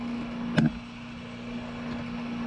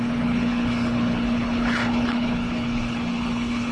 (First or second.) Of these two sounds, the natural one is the first